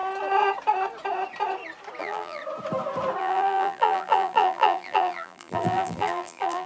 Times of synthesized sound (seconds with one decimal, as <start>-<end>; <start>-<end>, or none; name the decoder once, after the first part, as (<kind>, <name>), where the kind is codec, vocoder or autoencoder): 2.0-2.4 (vocoder, BigVGAN v2); 3.2-6.7